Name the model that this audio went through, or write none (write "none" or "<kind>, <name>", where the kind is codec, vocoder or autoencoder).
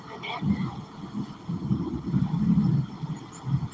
none